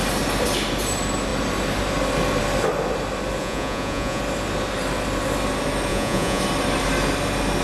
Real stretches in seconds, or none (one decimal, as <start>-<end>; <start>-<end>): 0.0-3.4; 4.2-5.9; 6.4-7.6